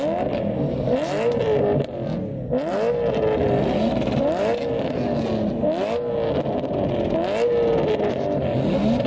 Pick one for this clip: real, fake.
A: real